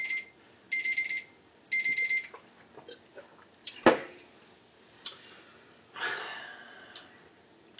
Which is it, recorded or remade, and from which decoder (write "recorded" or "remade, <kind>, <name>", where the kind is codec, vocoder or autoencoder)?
recorded